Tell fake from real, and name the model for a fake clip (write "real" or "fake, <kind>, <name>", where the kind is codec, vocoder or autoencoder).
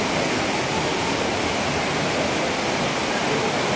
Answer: real